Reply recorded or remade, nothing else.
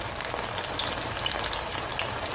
recorded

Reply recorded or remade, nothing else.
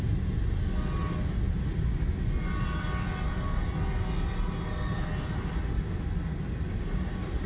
recorded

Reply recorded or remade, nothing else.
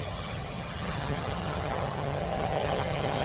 remade